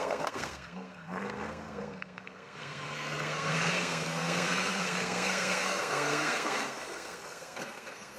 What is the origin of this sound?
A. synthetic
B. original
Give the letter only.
A